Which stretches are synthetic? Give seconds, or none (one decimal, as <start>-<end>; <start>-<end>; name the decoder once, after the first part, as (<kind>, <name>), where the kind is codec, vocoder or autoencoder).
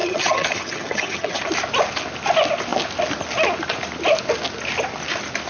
0.0-1.4 (vocoder, HiFi-GAN)